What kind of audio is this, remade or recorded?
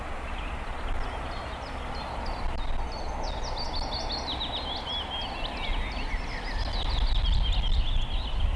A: recorded